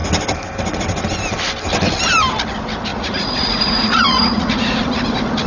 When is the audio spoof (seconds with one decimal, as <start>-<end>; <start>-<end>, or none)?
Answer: 2.9-4.9